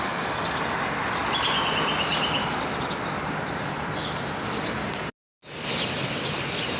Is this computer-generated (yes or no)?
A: no